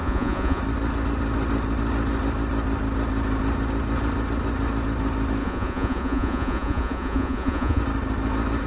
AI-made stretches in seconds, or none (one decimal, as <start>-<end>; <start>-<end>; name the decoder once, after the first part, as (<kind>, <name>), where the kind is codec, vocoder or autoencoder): 0.0-0.6 (vocoder, Vocos); 5.4-7.8